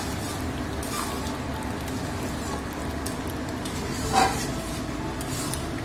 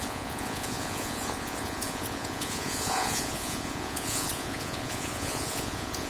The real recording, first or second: first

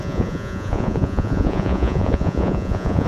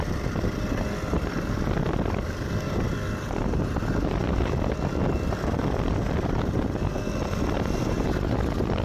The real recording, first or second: second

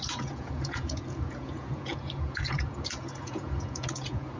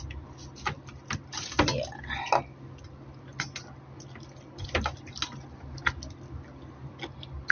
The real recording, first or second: second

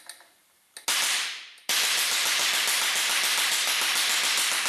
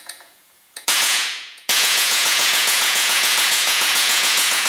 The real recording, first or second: first